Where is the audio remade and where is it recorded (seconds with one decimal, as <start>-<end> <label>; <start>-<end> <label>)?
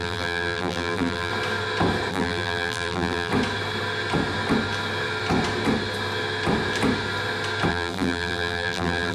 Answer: 0.0-1.3 remade; 1.3-2.1 recorded; 2.1-3.3 remade; 3.3-7.7 recorded; 7.7-9.1 remade